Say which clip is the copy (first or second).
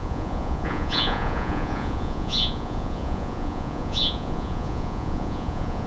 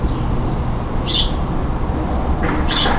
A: first